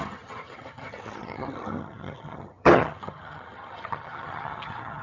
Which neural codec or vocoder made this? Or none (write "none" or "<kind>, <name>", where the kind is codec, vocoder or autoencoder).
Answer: vocoder, HiFi-GAN